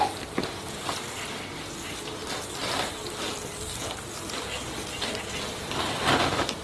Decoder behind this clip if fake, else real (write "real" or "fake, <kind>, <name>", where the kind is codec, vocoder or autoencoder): real